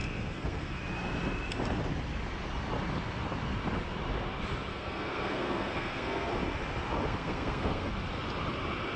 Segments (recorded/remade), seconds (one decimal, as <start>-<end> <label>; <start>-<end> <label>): 0.0-0.8 remade; 0.8-4.7 recorded; 4.7-6.3 remade; 6.3-7.1 recorded; 7.1-7.9 remade; 7.9-9.0 recorded